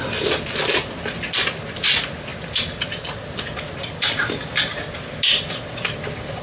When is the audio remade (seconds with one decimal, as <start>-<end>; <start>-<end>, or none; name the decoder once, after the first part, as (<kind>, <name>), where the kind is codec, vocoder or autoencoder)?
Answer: none